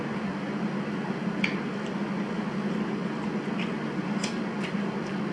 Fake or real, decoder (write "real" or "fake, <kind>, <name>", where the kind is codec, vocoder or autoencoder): real